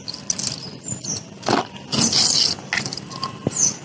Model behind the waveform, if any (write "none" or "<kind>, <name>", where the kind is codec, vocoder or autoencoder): none